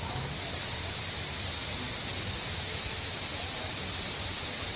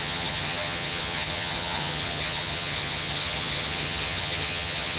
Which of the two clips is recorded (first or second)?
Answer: first